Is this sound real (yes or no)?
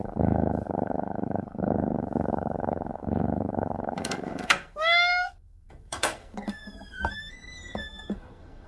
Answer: no